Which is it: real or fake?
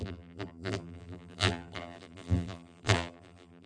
fake